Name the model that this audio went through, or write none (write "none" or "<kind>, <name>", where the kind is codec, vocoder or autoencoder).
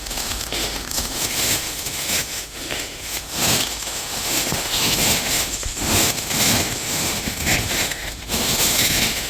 autoencoder, DAC-VAE